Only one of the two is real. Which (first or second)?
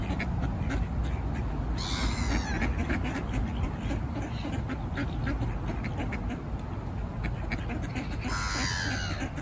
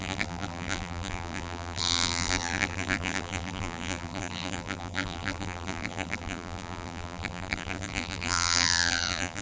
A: first